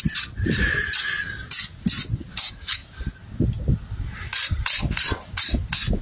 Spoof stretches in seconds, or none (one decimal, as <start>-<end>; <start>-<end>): none